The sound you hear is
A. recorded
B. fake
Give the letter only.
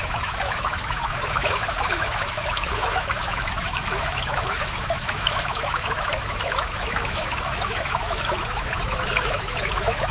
B